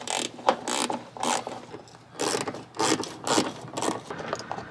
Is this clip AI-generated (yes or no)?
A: no